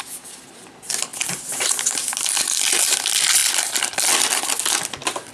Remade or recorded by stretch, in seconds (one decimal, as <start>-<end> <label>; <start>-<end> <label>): 0.0-5.3 recorded